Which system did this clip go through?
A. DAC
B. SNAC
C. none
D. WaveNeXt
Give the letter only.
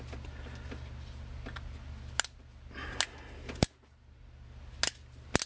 C